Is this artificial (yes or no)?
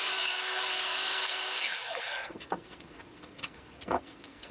yes